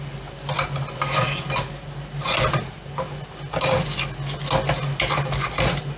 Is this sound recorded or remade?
recorded